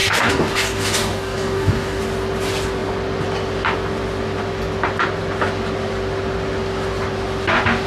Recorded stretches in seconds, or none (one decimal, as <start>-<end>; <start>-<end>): 2.0-7.9